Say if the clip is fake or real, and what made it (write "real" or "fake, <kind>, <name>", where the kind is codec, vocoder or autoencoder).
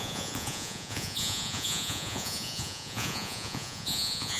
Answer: fake, vocoder, Vocos